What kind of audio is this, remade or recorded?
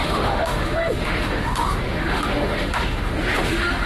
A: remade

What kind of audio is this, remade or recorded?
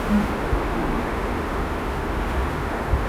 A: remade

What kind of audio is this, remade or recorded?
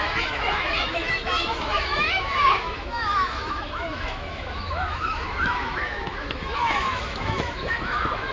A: remade